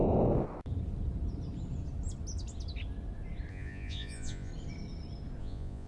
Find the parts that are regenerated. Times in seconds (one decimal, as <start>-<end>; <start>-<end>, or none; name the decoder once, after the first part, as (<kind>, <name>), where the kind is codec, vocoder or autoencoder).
3.5-4.5 (vocoder, Vocos); 5.4-5.9